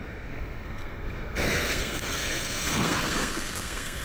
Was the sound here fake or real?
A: fake